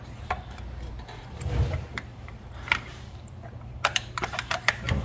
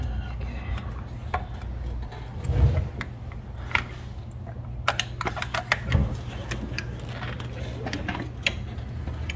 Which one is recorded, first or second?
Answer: second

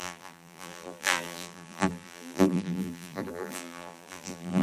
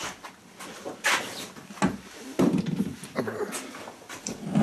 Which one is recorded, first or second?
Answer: second